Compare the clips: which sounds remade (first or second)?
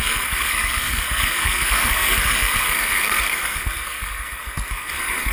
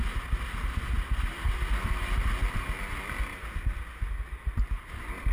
first